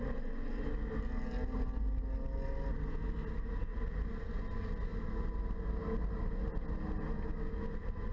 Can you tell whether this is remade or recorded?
recorded